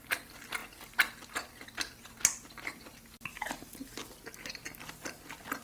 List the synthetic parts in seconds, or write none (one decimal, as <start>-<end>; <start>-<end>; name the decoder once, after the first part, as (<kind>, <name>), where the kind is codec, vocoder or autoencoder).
none

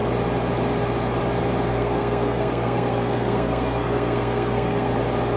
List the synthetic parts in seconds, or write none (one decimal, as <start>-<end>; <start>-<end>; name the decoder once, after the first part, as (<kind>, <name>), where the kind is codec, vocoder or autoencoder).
1.7-4.9 (codec, SNAC)

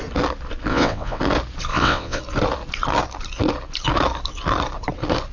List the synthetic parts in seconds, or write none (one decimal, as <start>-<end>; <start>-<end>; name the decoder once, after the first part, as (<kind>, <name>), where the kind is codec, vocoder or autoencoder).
0.7-1.2 (vocoder, WaveNeXt); 1.7-2.2

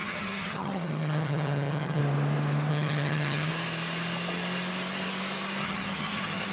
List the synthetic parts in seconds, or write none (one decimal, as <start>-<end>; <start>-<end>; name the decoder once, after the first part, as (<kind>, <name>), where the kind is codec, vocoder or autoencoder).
0.0-2.0 (vocoder, HiFi-GAN); 2.7-3.5; 5.6-6.5

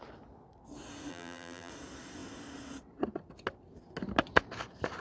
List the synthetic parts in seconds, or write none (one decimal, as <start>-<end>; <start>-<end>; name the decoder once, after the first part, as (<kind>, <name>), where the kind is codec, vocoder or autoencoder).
1.1-1.7 (vocoder, BigVGAN v2)

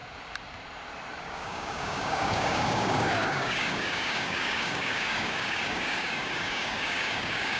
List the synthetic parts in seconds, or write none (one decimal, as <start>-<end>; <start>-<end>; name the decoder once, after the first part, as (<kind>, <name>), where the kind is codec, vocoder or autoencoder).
1.2-7.6 (codec, DAC)

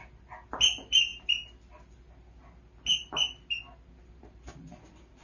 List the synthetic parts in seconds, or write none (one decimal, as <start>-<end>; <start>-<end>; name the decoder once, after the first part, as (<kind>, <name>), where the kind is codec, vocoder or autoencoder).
none

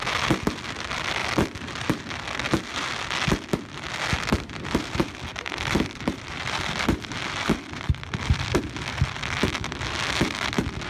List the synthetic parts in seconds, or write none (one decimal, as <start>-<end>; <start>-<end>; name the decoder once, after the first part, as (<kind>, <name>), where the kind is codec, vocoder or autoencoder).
1.2-2.0 (vocoder, BigVGAN v2); 5.3-8.5